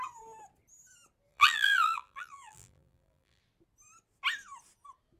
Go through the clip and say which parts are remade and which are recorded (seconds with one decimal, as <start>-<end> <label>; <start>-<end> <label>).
0.0-1.3 recorded; 1.3-3.4 remade; 3.4-5.2 recorded